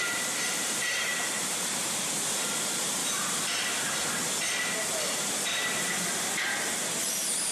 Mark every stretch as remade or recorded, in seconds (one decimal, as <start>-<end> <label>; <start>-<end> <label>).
0.0-3.0 remade; 3.0-7.1 recorded; 7.1-7.5 remade